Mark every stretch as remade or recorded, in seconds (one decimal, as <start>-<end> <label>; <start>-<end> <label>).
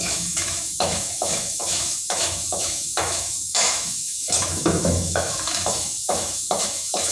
0.0-7.1 remade